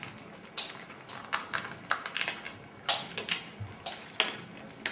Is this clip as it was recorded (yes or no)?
yes